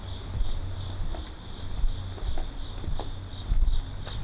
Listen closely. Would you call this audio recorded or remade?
recorded